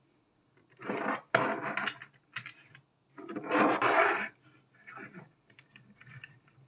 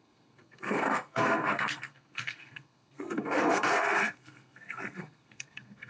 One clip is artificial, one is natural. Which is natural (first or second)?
first